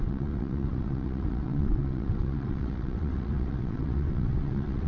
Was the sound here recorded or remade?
remade